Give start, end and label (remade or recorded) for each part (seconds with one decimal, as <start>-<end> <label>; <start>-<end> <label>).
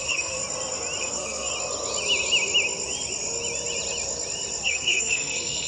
0.0-0.4 remade; 0.4-1.0 recorded; 1.0-1.5 remade; 1.5-4.6 recorded; 4.6-5.7 remade